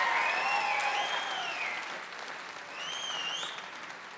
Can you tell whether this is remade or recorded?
recorded